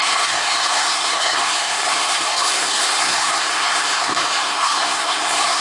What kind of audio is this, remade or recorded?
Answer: remade